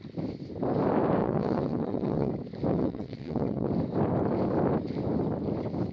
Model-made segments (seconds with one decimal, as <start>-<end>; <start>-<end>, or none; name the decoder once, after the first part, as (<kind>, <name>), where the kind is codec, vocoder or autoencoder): 1.2-2.3 (vocoder, WaveNeXt); 2.7-3.7